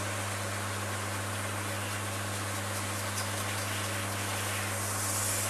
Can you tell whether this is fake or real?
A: real